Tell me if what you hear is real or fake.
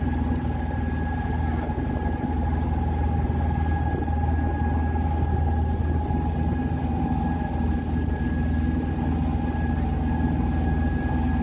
real